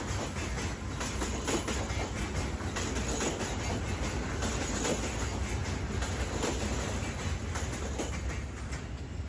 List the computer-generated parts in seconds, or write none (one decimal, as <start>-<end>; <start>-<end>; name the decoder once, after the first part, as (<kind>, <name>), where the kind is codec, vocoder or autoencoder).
none